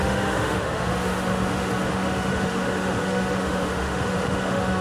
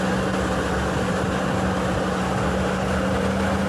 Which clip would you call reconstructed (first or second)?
first